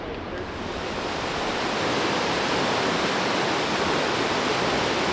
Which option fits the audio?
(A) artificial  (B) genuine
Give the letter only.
B